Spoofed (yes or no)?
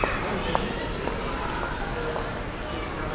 no